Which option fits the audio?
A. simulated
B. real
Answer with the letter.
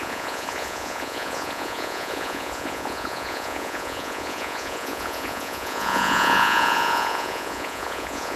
A